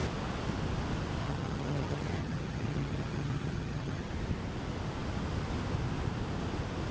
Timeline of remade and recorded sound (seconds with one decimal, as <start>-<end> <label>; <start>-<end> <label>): 0.0-1.2 recorded; 1.2-4.1 remade; 4.1-6.9 recorded